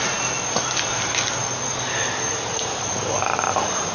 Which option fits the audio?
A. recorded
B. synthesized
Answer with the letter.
A